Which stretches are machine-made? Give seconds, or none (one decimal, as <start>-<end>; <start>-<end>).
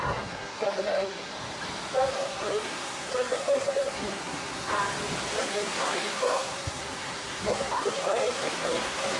0.0-1.3; 2.1-4.7; 5.4-9.2